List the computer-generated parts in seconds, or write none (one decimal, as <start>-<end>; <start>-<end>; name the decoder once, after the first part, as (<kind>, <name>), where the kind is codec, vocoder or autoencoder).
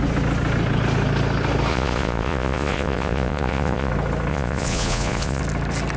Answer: 1.7-3.9 (vocoder, Vocos); 4.3-5.4